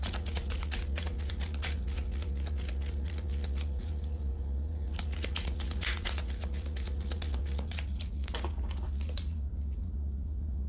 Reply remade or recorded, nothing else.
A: remade